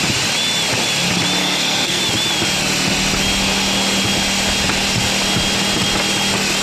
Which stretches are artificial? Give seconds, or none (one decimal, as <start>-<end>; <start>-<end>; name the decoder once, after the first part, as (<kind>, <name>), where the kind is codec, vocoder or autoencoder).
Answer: 1.4-2.0 (codec, SNAC)